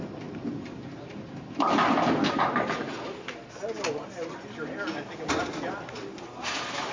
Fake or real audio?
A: real